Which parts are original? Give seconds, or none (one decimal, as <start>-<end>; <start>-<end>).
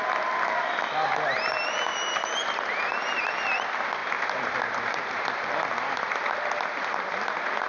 0.0-7.7